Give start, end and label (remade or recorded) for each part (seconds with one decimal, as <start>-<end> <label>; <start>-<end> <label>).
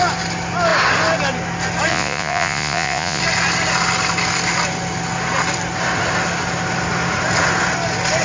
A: 0.0-1.9 recorded; 1.9-3.2 remade; 3.2-8.2 recorded